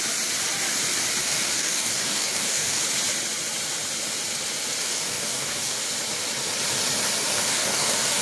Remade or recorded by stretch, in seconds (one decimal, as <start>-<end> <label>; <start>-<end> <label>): 0.0-1.2 recorded; 1.2-2.8 remade; 2.8-4.8 recorded; 4.8-5.8 remade; 5.8-7.5 recorded; 7.5-8.2 remade